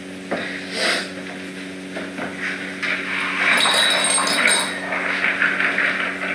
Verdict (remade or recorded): recorded